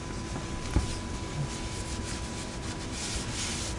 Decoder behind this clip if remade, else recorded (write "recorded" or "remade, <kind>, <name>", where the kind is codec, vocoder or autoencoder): recorded